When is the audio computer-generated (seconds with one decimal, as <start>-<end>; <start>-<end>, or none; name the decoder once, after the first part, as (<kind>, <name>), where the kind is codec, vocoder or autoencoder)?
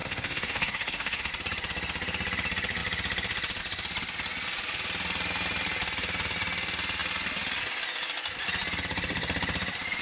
0.0-1.3 (codec, SNAC)